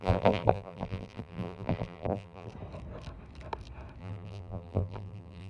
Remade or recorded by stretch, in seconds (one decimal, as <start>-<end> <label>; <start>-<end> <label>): 0.0-2.5 remade; 2.5-4.0 recorded; 4.0-5.5 remade